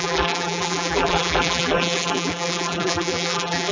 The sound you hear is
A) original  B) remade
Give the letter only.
B